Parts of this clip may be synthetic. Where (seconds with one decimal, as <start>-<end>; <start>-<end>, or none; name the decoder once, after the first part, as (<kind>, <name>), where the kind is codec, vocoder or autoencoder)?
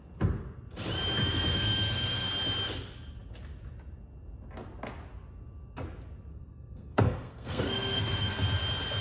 1.2-2.3 (codec, SNAC); 6.3-8.3